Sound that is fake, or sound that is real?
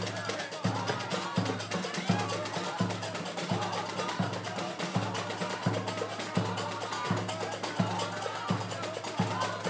real